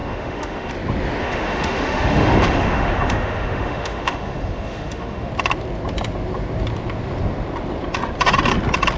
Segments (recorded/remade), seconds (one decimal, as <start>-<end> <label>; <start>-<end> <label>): 0.0-0.7 remade; 0.7-1.2 recorded; 1.2-5.3 remade; 5.3-9.0 recorded